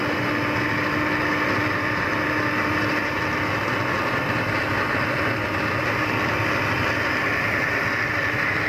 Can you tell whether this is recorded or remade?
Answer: recorded